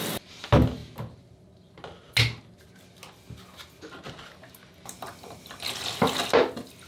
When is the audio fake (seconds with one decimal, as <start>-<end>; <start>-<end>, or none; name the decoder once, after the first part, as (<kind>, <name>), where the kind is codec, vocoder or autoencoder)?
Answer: none